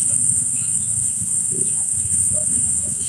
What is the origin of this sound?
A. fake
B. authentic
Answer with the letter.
A